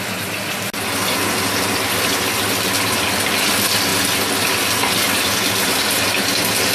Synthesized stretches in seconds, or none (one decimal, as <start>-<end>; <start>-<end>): none